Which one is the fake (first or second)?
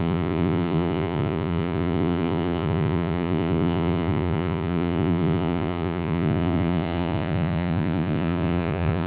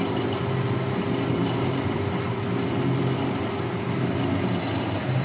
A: first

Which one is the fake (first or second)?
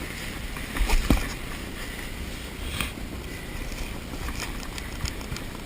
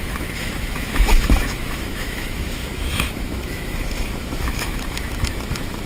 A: second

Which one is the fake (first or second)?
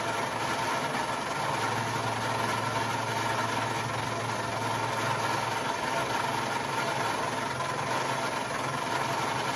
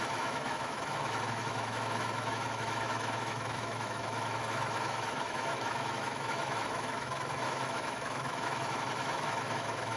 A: second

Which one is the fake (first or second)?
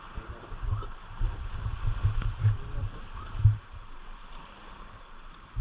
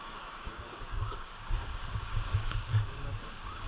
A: second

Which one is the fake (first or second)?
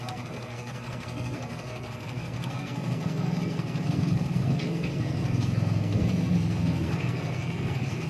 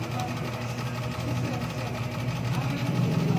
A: first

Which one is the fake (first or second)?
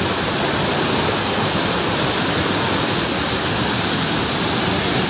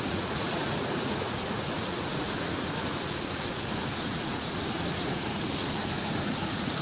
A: second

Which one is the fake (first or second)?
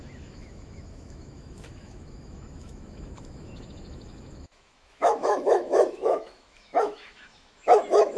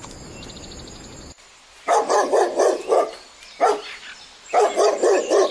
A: first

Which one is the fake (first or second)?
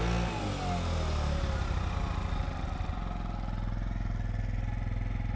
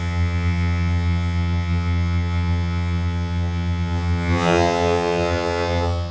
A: second